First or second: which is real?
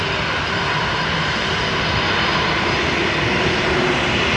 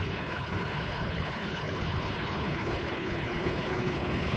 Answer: first